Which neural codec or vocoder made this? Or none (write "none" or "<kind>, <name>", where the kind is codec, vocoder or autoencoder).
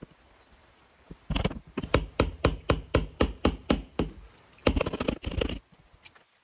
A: none